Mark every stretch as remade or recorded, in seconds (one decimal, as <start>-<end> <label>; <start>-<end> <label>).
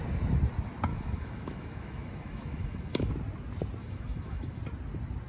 0.0-0.9 recorded; 0.9-3.1 remade; 3.1-3.8 recorded; 3.8-4.6 remade; 4.6-5.3 recorded